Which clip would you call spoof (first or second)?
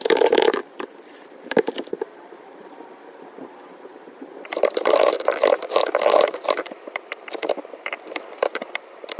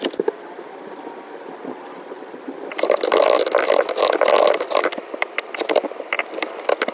first